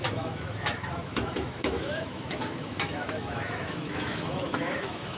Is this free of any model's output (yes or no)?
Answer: no